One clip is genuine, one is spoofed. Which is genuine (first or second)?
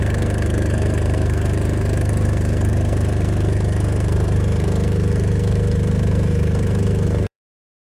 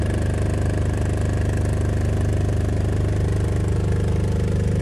second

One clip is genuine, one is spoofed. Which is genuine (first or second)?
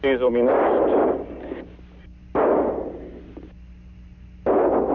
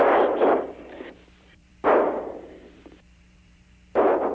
first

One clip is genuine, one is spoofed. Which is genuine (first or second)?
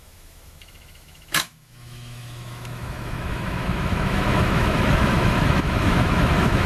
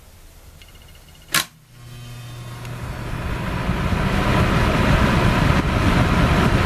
second